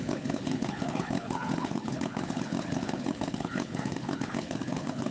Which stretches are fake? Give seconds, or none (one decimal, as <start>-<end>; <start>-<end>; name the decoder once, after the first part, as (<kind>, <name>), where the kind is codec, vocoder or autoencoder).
0.0-5.1 (codec, HILCodec)